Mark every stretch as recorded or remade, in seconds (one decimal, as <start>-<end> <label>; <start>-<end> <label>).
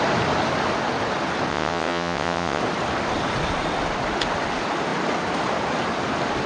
0.0-1.5 recorded; 1.5-2.6 remade; 2.6-6.5 recorded